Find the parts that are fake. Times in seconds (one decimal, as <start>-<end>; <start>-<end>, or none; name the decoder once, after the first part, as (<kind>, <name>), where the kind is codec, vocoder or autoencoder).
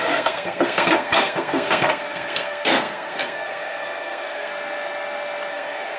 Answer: 0.0-4.5 (codec, SNAC); 5.5-6.0